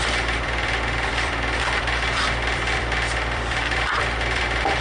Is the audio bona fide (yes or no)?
no